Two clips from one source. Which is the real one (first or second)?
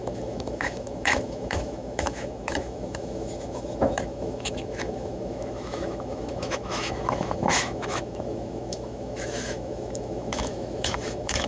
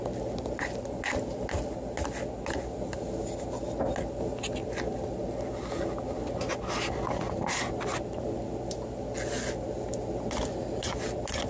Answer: second